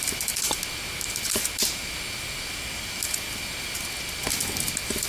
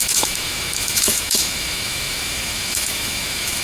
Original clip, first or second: first